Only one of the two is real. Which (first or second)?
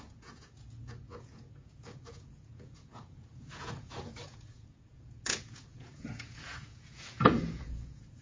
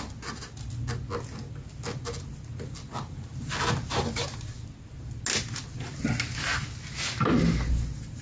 second